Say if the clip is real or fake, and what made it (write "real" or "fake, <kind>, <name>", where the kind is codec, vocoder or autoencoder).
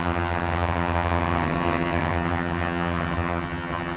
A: fake, vocoder, HiFi-GAN